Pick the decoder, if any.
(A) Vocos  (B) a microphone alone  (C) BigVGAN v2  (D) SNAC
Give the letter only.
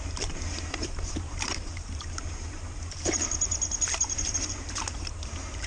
C